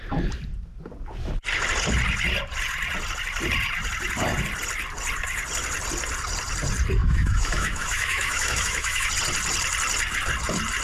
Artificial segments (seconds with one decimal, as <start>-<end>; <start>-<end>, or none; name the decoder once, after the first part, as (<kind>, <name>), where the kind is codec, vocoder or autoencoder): 7.0-9.1 (autoencoder, DAC-VAE)